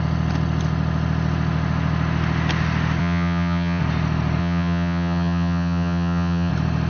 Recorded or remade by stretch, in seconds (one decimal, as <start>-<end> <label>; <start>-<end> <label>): 0.0-3.0 recorded; 3.0-3.8 remade; 3.8-4.4 recorded; 4.4-6.5 remade; 6.5-6.9 recorded